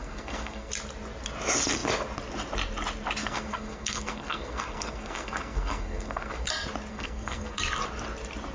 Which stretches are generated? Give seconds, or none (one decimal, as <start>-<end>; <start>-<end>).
0.0-0.7; 3.2-6.5; 6.9-7.6